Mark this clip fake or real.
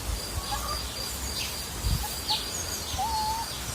real